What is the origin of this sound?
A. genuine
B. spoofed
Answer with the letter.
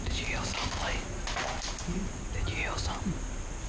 A